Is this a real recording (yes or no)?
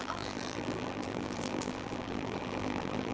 no